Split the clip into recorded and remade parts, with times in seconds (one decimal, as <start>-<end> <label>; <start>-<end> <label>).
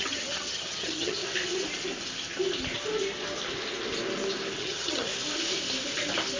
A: 0.0-1.2 remade; 1.2-4.6 recorded; 4.6-5.1 remade; 5.1-6.4 recorded